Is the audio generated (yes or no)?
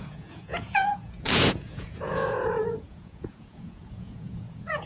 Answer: yes